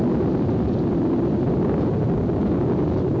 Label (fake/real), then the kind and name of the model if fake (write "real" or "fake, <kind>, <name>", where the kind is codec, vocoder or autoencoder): real